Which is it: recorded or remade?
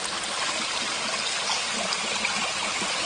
recorded